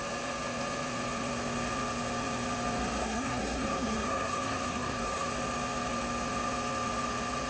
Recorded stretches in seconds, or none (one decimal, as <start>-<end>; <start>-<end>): 0.0-3.0; 5.3-7.5

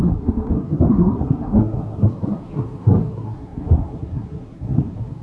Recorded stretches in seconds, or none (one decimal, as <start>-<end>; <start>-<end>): none

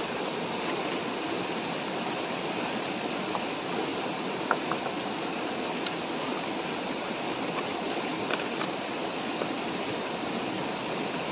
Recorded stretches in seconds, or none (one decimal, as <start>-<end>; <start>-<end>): 0.0-11.3

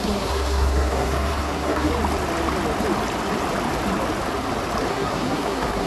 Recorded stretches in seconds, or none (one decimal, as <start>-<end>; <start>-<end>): 1.9-4.9

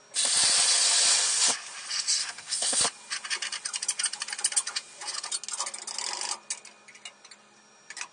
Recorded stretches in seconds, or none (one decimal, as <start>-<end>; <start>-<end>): 0.0-2.2; 2.8-8.1